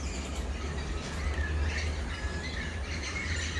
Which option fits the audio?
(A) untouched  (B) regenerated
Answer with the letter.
A